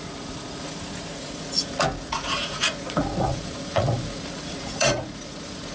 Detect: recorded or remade remade